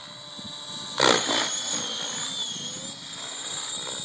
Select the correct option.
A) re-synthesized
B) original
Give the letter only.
B